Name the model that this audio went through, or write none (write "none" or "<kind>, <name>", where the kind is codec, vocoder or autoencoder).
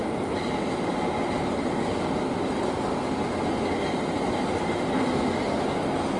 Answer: none